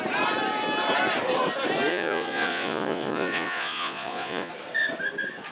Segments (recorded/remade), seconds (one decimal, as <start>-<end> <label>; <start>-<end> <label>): 0.0-1.9 recorded; 1.9-4.5 remade; 4.5-5.5 recorded